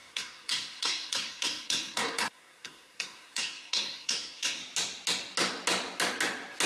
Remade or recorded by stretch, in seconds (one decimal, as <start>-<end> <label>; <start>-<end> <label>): 0.0-4.6 remade; 4.6-6.7 recorded